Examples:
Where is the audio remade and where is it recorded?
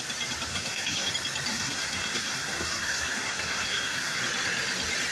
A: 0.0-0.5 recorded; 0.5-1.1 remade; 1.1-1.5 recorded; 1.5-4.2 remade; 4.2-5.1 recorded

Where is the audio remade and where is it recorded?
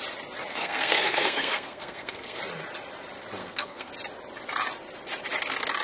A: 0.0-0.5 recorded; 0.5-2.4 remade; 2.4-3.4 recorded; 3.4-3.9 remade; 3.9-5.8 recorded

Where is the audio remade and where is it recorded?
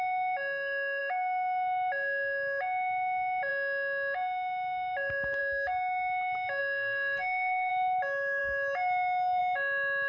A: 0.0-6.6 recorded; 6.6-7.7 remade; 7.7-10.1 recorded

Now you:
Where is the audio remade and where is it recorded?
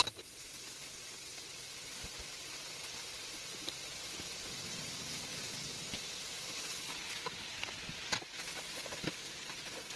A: 0.0-10.0 recorded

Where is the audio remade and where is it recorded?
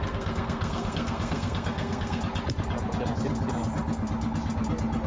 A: 0.0-2.2 remade; 2.2-5.1 recorded